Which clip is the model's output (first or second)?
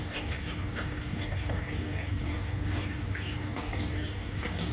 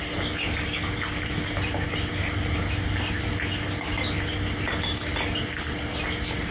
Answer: first